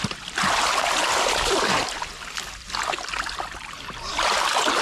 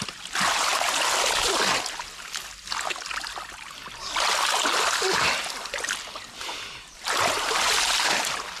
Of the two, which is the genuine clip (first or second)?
second